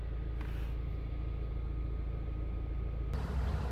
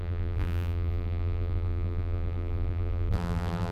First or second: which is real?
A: first